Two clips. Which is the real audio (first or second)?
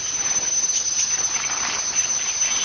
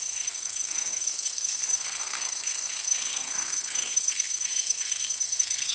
first